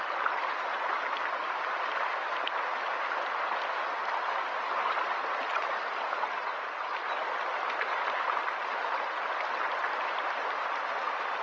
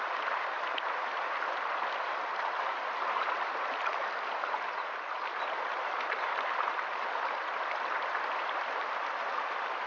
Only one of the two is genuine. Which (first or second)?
first